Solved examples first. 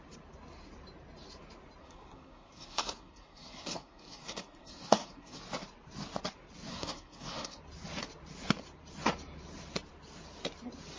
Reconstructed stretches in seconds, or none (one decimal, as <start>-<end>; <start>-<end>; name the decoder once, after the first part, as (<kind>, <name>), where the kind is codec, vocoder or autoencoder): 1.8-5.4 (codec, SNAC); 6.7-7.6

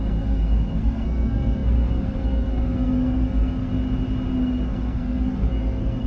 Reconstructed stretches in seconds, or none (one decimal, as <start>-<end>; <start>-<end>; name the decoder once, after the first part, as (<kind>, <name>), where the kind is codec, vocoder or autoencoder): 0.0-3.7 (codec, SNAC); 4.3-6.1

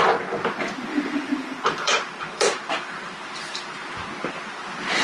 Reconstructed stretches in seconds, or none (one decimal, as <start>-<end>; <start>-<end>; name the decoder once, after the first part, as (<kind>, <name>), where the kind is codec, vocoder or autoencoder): 0.9-3.9 (vocoder, BigVGAN v2)

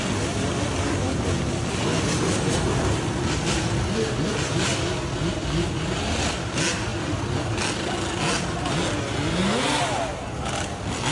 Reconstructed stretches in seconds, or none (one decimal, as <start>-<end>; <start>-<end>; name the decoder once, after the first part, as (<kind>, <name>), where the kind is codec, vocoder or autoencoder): none